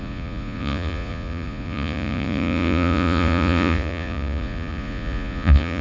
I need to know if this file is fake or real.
fake